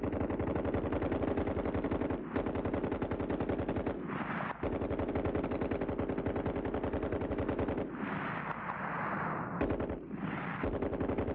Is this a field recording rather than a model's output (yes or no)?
yes